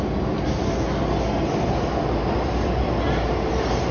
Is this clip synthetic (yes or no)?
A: no